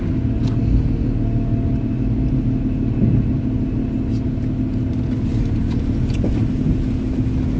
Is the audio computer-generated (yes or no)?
no